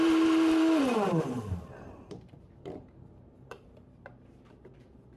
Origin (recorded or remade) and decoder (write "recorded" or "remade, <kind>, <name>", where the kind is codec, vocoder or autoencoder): remade, vocoder, BigVGAN v2